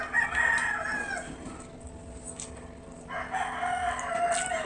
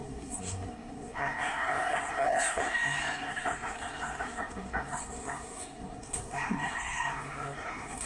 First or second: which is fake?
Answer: second